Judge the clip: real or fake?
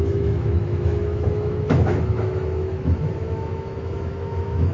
fake